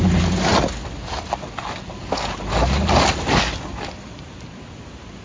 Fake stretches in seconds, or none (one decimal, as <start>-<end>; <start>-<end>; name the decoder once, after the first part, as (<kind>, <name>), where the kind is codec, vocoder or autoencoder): none